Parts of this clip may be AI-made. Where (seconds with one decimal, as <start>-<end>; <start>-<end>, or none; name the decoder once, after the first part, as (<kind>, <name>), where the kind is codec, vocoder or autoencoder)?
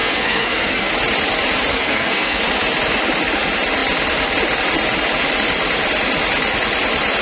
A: 0.0-0.9 (codec, SNAC); 1.7-2.4